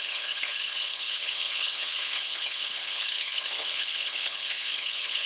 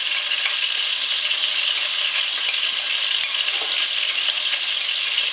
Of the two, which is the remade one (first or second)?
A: first